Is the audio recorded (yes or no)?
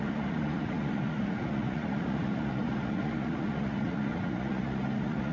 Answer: no